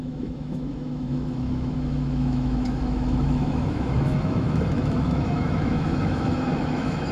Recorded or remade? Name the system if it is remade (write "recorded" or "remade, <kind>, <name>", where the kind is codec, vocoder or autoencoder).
remade, autoencoder, DAC-VAE